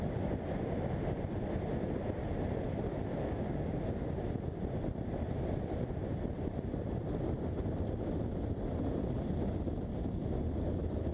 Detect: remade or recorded recorded